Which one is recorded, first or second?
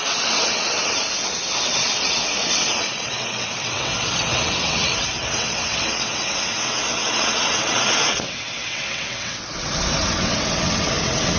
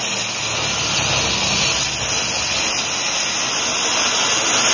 second